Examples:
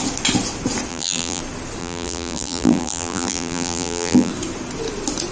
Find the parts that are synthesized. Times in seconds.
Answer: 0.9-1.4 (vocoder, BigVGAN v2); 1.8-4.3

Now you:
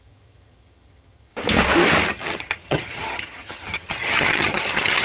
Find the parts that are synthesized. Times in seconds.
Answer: 0.0-1.3 (vocoder, HiFi-GAN); 2.1-5.0

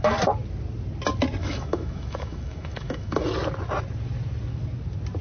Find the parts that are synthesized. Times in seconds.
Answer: 1.4-3.2 (autoencoder, DAC-VAE)